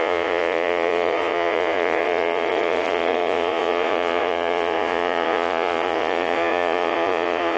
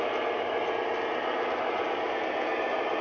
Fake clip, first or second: first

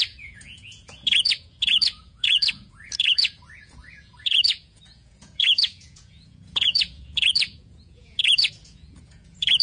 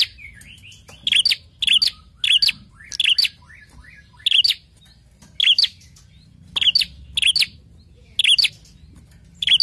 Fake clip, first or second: first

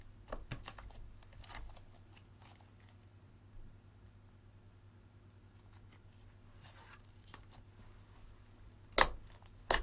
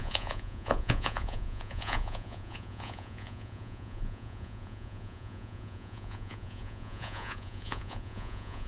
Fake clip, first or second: second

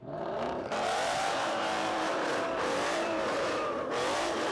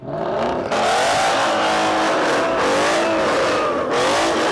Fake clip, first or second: first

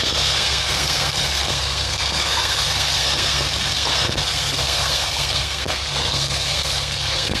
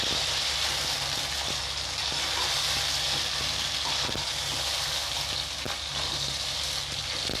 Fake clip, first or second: first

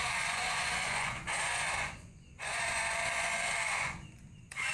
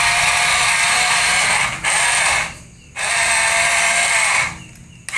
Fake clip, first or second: first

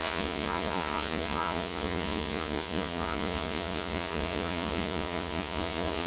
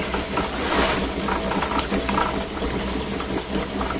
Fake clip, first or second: first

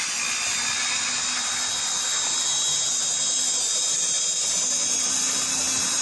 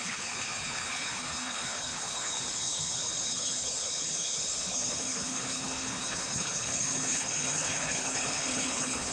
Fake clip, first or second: second